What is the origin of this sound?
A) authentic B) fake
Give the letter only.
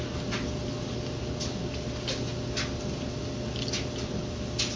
A